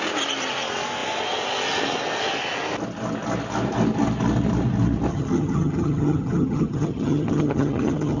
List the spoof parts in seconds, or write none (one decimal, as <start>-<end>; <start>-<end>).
5.1-8.2